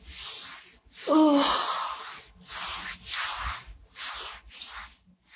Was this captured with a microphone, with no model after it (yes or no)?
yes